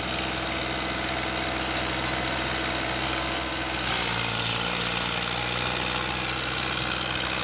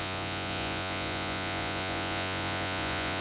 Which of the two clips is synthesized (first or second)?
second